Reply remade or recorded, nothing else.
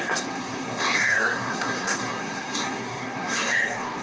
remade